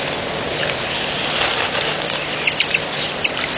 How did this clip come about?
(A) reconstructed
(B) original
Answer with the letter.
B